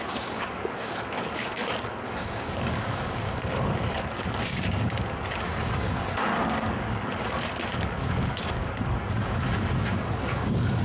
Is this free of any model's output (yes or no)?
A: no